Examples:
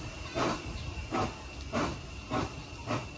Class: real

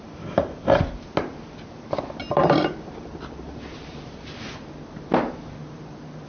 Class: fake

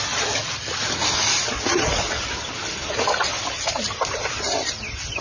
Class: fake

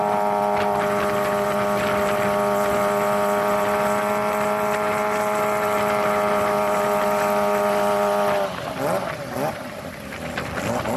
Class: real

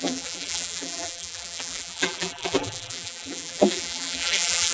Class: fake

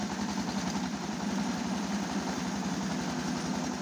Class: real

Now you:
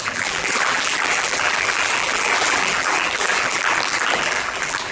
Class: fake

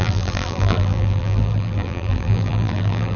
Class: fake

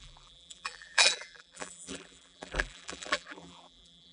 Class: fake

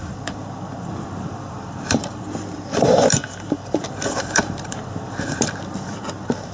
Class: fake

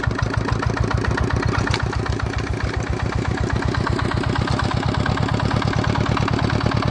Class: real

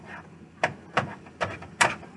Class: real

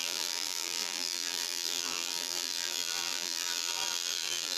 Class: fake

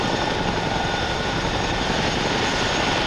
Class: fake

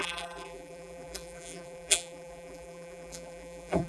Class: fake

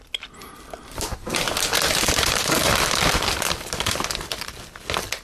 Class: real